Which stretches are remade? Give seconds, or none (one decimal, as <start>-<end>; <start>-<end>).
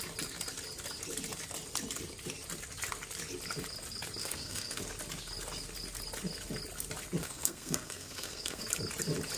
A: 4.2-4.8; 7.2-8.6